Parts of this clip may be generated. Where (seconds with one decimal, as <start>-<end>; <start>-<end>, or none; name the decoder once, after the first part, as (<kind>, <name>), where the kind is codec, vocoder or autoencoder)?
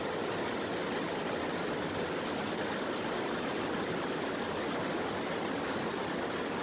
none